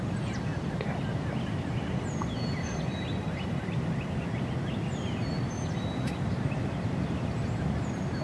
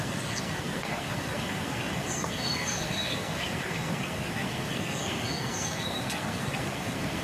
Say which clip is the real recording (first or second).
first